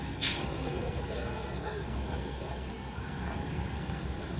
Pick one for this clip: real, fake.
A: fake